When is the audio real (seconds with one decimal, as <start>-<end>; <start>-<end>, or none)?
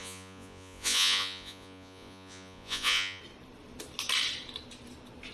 3.2-5.3